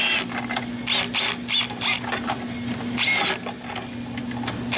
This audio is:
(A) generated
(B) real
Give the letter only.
B